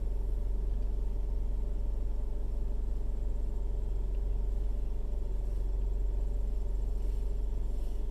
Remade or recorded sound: recorded